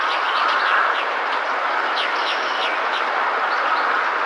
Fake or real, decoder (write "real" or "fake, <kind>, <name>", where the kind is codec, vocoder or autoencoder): real